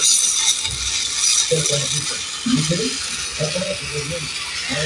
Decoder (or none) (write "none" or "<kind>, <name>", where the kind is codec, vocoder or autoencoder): none